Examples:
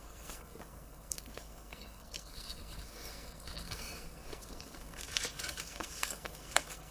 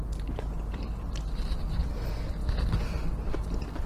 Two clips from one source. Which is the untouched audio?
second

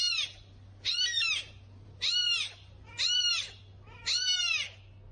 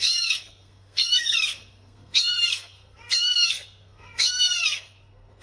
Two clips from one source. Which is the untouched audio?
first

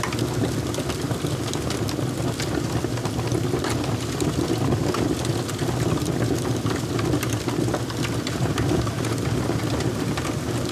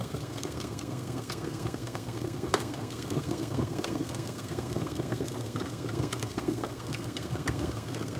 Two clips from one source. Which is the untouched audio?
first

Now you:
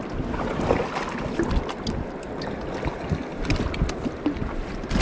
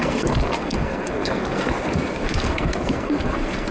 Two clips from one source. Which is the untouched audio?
first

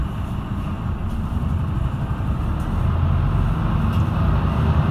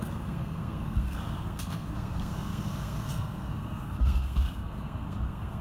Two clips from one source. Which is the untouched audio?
first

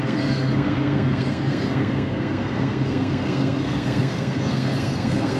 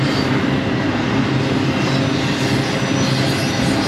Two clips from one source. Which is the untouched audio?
second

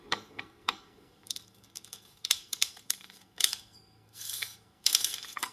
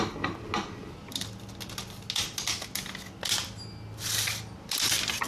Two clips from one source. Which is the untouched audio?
second